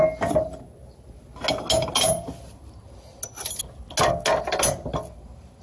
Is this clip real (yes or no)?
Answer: yes